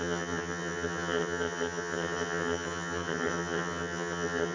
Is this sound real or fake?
fake